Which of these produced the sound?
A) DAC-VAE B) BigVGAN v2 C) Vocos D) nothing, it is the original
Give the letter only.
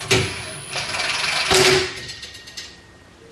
D